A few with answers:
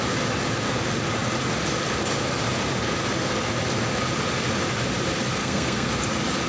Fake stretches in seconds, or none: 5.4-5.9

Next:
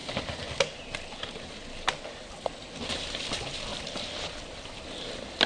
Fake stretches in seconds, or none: none